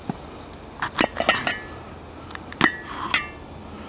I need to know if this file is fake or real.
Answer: real